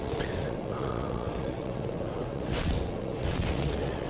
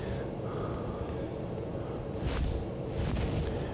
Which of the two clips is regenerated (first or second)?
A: first